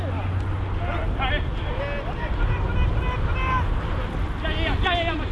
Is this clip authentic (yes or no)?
yes